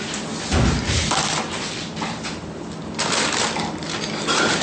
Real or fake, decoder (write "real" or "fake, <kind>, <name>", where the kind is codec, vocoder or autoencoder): real